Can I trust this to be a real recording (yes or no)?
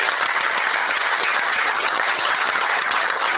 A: no